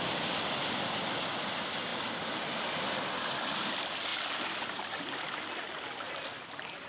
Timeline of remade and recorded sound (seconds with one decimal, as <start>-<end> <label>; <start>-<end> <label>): 0.0-6.9 recorded